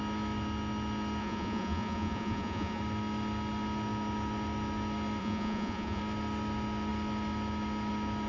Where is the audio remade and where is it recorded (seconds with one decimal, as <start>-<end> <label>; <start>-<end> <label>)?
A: 0.0-1.2 recorded; 1.2-2.8 remade; 2.8-5.2 recorded; 5.2-6.0 remade; 6.0-8.3 recorded